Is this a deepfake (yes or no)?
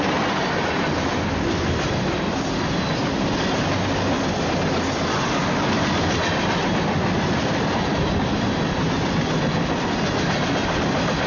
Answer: no